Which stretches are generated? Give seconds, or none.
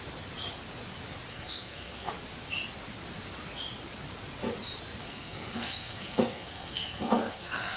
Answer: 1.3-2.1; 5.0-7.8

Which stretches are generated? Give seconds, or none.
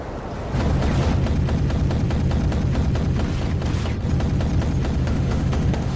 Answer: 5.0-6.0